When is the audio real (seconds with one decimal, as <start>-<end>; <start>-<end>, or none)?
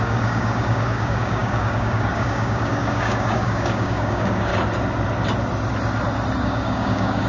4.5-6.4